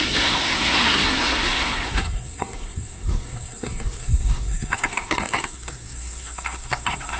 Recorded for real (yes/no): no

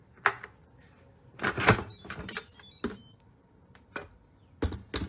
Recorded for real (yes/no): yes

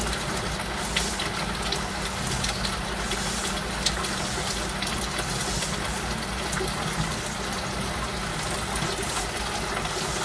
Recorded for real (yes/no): yes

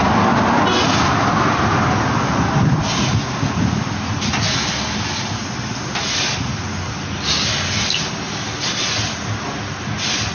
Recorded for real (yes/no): yes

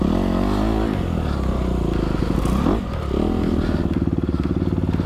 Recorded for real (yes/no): yes